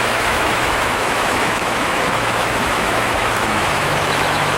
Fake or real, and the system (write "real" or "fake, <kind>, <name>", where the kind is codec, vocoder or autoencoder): fake, autoencoder, DAC-VAE